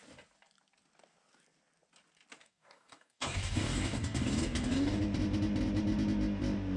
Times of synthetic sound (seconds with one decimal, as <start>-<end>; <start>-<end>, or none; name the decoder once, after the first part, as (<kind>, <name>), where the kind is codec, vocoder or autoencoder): 2.4-5.0 (codec, DAC)